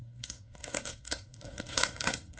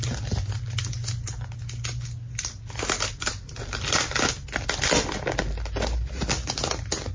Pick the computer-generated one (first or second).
first